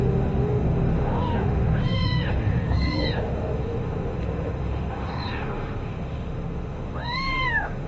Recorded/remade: remade